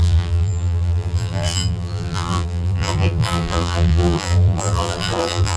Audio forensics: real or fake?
fake